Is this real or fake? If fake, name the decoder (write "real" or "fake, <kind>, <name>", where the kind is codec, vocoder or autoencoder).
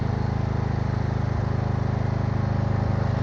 real